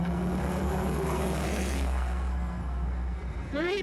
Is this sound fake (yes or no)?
yes